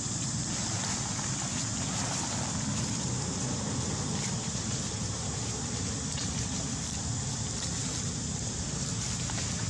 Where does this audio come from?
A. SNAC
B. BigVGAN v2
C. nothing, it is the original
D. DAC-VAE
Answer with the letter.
C